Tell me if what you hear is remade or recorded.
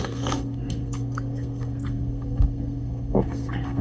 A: remade